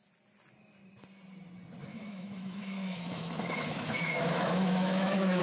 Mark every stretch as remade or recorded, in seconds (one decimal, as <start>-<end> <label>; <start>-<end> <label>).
0.0-1.9 recorded; 1.9-5.4 remade

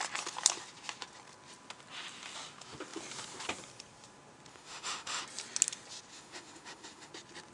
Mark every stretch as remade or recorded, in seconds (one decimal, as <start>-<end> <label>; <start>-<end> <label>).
0.0-4.5 recorded; 4.5-5.2 remade; 5.2-6.1 recorded; 6.1-7.1 remade; 7.1-7.5 recorded